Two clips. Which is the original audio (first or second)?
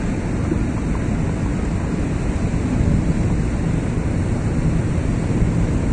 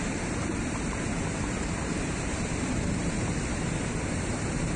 first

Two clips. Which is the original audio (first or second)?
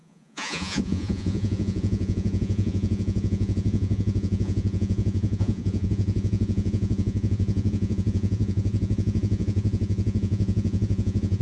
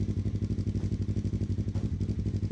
second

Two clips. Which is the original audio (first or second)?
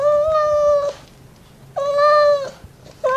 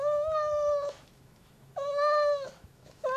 first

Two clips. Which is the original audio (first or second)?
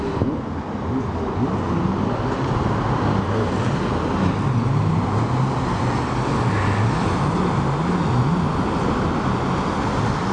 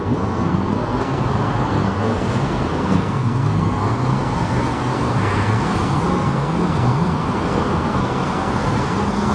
first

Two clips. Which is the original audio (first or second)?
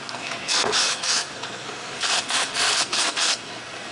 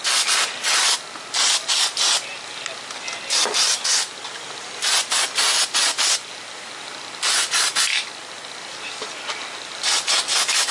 second